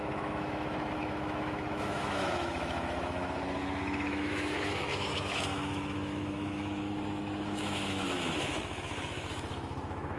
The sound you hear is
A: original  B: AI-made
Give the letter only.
B